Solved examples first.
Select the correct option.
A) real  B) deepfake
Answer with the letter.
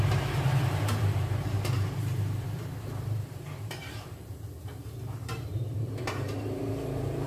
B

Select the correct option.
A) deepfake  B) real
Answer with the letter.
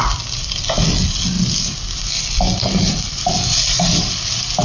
B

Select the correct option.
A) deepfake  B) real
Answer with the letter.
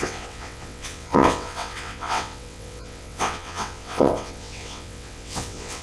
A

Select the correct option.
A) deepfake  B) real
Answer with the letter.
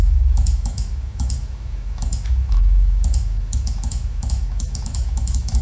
A